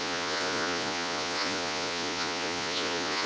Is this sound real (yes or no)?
no